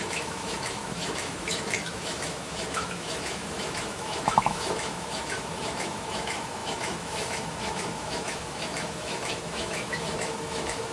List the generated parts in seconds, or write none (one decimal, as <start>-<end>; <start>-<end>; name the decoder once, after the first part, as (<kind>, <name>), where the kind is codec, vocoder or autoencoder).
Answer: 0.0-10.9 (autoencoder, DAC-VAE)

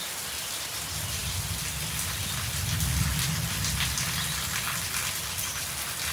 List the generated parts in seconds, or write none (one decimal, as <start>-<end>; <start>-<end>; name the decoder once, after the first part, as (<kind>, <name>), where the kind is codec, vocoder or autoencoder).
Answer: none

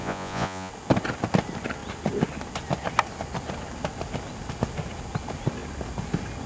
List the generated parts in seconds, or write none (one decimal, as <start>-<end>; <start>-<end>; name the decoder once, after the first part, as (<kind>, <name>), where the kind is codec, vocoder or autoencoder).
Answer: 0.0-0.7 (vocoder, Vocos)

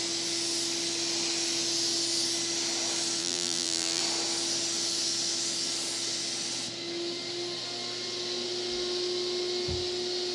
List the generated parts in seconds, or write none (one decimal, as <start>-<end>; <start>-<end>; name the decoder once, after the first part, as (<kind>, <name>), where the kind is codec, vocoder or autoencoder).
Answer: 3.2-4.0 (vocoder, BigVGAN v2)

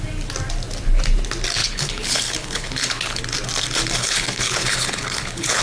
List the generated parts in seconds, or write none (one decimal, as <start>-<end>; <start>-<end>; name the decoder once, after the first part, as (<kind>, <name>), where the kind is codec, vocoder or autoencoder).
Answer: 1.6-3.2 (codec, HILCodec); 4.0-5.6

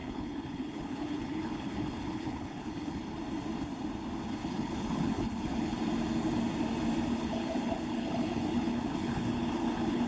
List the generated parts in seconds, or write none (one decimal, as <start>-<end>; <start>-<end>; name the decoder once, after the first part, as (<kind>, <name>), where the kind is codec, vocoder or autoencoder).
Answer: 0.0-3.0 (codec, HILCodec); 4.3-5.8; 7.1-10.1

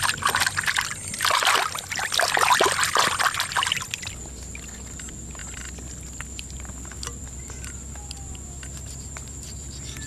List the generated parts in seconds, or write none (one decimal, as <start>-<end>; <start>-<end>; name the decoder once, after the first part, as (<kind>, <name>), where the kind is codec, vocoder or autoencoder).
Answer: none